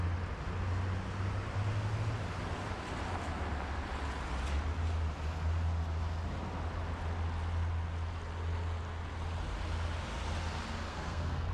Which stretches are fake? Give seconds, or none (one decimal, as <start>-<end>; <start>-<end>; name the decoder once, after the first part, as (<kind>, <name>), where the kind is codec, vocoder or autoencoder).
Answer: 10.9-11.5 (codec, SNAC)